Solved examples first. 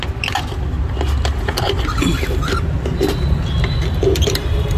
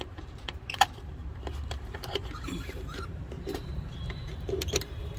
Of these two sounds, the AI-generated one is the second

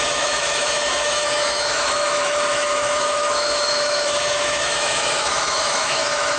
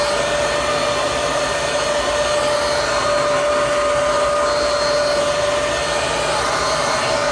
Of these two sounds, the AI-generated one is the first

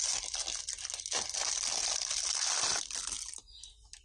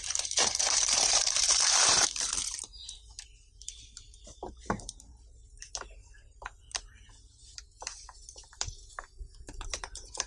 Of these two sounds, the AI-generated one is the second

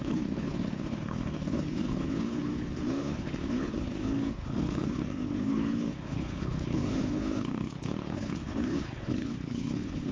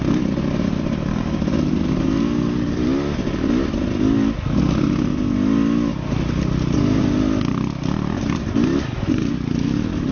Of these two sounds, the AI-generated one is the first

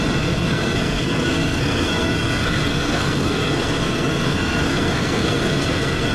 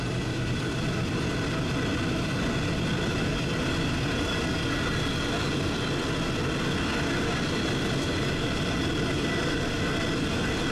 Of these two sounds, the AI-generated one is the first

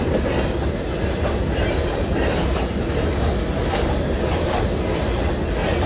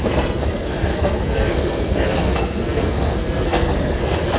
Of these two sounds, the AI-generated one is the second